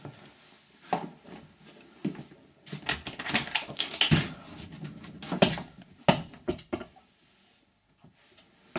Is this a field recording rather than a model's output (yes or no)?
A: yes